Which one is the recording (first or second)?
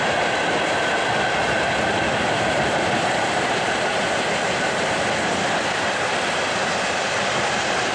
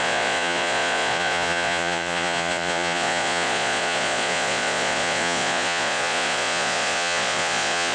first